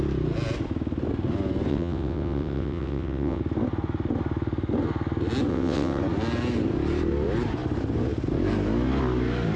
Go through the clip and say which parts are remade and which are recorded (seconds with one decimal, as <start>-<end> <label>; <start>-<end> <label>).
0.0-1.7 recorded; 1.7-3.4 remade; 3.4-5.5 recorded; 5.5-6.0 remade; 6.0-9.6 recorded